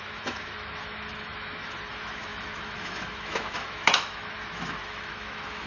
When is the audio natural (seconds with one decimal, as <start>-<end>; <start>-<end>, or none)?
none